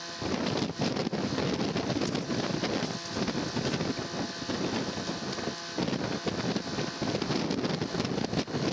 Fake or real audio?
real